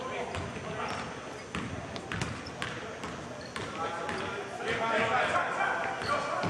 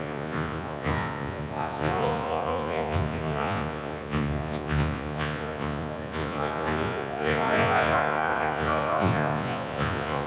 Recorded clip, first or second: first